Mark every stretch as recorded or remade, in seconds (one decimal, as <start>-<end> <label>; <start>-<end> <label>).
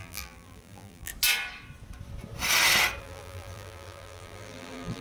0.0-1.1 remade; 1.1-3.0 recorded; 3.0-5.0 remade